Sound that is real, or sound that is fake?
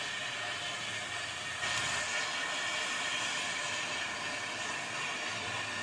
real